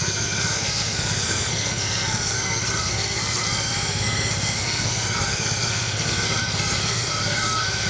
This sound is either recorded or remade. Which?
remade